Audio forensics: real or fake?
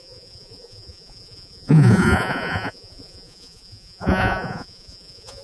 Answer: fake